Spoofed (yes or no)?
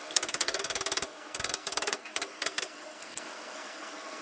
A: yes